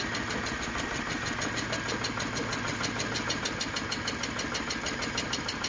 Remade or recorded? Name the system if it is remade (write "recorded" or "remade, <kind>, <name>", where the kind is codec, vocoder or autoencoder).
recorded